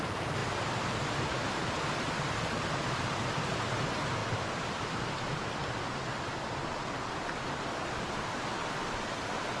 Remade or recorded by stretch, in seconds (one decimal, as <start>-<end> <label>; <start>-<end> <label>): 0.0-5.6 remade; 5.6-8.3 recorded; 8.3-9.6 remade